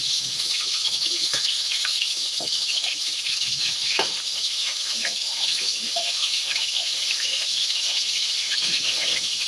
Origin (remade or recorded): remade